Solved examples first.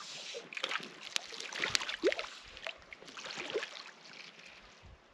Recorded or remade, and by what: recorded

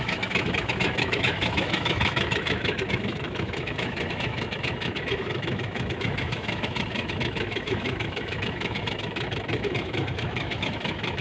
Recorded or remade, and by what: remade, autoencoder, DAC-VAE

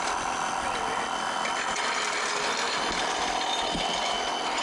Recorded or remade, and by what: recorded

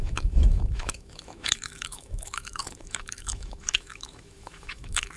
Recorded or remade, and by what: remade, autoencoder, DAC-VAE